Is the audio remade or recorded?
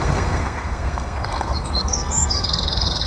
remade